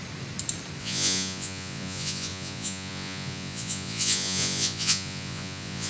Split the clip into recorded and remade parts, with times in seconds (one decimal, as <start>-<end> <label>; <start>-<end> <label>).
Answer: 0.0-0.8 recorded; 0.8-5.9 remade